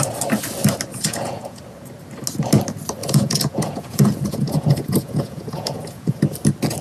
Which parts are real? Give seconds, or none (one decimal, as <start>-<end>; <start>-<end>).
0.0-0.9; 1.6-3.0; 6.2-6.8